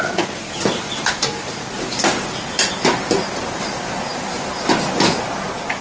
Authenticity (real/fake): fake